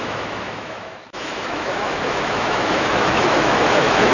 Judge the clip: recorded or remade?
remade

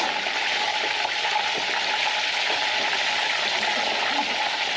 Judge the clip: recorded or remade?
recorded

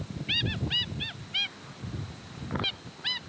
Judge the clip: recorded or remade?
recorded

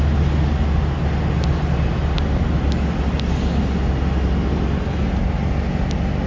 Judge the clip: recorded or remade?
recorded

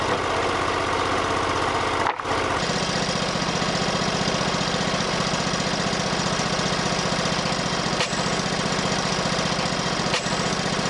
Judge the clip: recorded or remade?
recorded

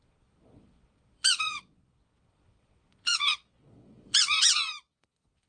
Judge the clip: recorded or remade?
remade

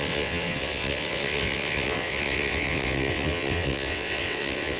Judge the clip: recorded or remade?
remade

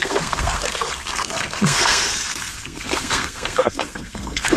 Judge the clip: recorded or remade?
remade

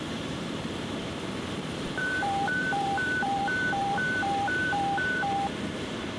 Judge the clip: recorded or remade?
remade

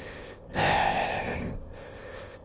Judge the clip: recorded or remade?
remade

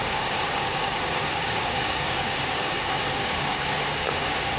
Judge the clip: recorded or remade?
remade